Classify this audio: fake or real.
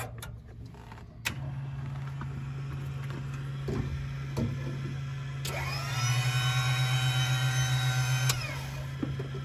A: real